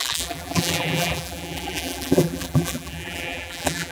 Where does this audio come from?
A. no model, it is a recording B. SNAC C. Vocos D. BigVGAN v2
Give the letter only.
D